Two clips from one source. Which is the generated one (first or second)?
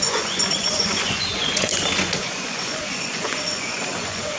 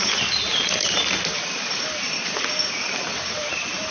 first